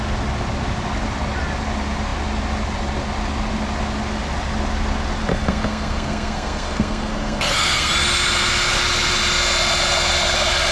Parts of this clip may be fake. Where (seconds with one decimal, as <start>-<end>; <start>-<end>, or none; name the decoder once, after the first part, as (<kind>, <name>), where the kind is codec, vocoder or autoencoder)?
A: 5.3-7.9 (codec, SNAC)